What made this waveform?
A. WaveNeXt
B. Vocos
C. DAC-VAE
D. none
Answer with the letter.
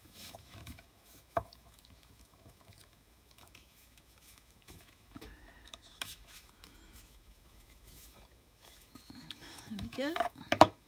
C